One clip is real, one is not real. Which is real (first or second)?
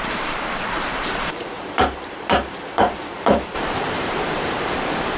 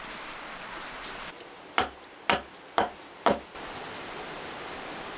second